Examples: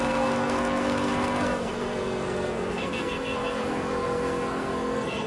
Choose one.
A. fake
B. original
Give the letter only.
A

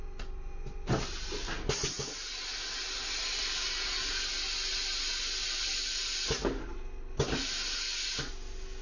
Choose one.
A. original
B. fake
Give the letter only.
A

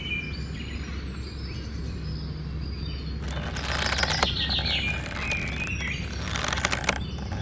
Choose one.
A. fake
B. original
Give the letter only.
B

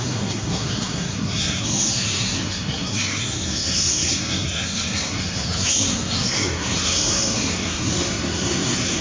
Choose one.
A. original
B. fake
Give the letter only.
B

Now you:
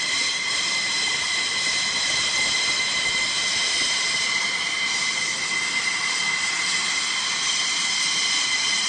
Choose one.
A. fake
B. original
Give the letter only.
B